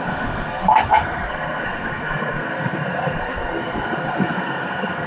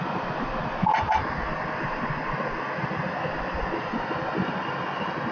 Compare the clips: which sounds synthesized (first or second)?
first